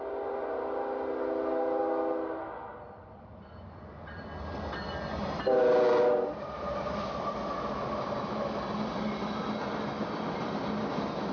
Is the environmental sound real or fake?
real